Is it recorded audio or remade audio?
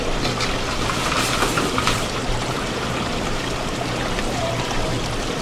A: remade